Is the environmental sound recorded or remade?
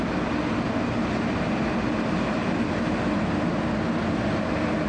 recorded